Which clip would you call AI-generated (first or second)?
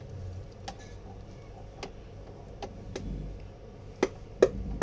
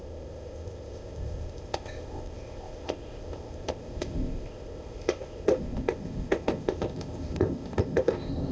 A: second